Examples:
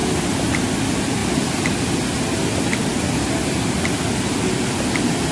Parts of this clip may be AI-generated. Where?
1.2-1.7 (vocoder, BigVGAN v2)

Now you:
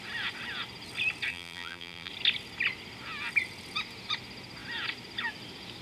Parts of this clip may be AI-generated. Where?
1.3-2.1 (vocoder, BigVGAN v2)

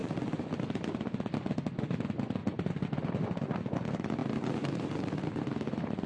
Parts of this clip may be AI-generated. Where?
0.0-0.8 (vocoder, BigVGAN v2); 2.4-3.1; 4.2-5.4

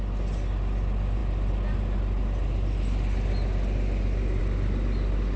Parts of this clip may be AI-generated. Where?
none

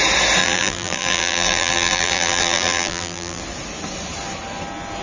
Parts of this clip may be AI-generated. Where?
0.4-3.4 (vocoder, BigVGAN v2)

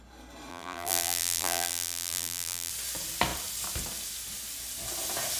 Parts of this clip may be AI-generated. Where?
0.5-2.7 (vocoder, BigVGAN v2)

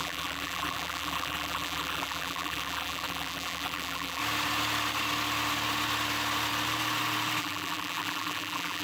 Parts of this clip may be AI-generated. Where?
0.0-4.2 (vocoder, BigVGAN v2); 7.4-8.8